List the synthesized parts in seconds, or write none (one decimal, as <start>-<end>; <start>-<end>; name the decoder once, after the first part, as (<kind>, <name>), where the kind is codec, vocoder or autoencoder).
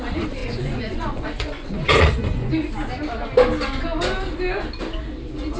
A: 0.4-2.5 (vocoder, Vocos)